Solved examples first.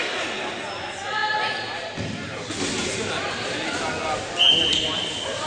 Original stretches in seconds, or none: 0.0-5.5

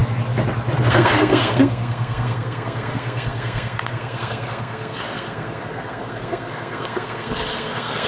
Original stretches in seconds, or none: 0.0-0.9

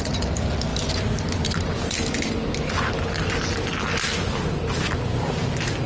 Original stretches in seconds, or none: 0.0-5.9

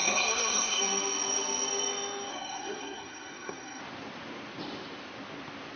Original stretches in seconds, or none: 0.8-2.3; 3.8-5.8

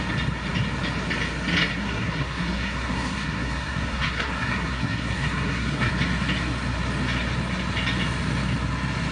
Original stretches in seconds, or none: 0.0-1.7; 5.9-9.1

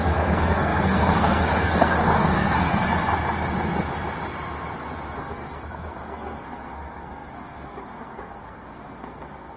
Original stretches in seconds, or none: 2.8-5.2